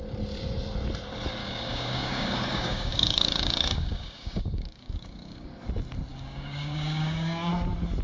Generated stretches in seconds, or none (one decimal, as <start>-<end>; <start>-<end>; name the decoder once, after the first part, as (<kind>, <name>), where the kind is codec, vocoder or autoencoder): 1.4-5.5 (codec, DAC); 6.1-7.5